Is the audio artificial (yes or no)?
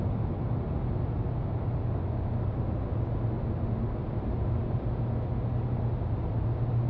no